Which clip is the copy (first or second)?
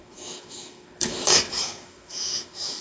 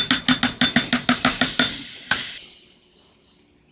first